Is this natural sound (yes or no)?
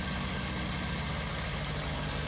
yes